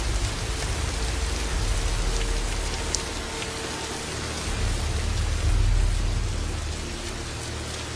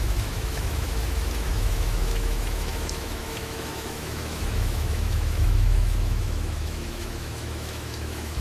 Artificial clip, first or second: second